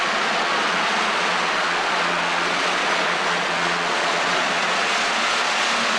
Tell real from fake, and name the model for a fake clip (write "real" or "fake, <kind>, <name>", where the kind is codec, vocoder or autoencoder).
fake, vocoder, Vocos